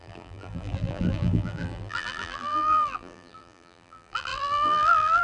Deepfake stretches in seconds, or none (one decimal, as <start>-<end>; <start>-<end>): 0.0-5.2